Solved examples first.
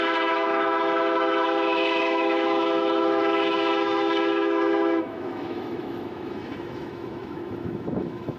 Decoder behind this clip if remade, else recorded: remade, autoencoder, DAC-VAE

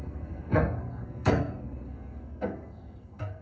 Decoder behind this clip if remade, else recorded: remade, codec, SNAC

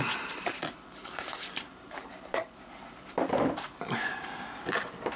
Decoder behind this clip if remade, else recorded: remade, vocoder, BigVGAN v2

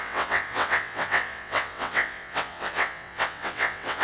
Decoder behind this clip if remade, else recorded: remade, vocoder, WaveNeXt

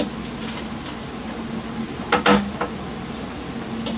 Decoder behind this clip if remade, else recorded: recorded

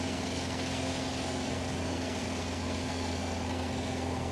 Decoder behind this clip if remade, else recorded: remade, codec, SNAC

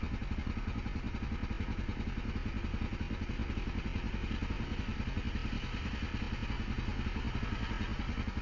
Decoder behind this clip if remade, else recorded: recorded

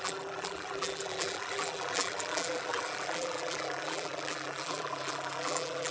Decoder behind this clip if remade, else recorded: remade, vocoder, BigVGAN v2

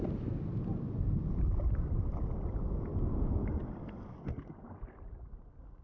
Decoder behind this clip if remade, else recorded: recorded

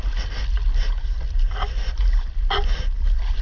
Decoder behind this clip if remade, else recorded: recorded